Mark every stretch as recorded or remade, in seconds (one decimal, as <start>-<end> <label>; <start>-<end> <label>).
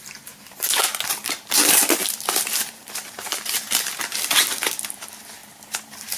0.0-6.2 remade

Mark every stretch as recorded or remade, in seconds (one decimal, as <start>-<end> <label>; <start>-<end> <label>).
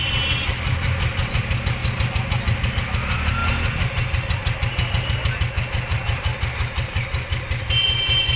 0.0-8.4 recorded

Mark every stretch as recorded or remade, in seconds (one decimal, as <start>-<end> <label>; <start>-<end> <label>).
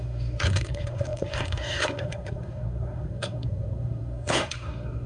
0.0-5.1 remade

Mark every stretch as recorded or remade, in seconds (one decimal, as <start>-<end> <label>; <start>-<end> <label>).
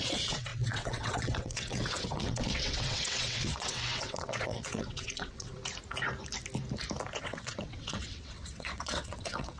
0.0-5.6 remade; 5.6-7.2 recorded; 7.2-9.6 remade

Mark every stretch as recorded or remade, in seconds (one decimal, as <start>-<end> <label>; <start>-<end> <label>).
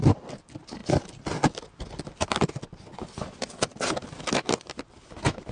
0.0-3.7 remade; 3.7-4.6 recorded; 4.6-5.5 remade